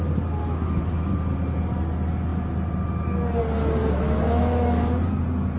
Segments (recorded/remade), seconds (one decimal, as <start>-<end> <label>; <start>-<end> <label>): 0.0-0.4 recorded; 0.4-1.1 remade; 1.1-3.8 recorded; 3.8-5.1 remade; 5.1-5.6 recorded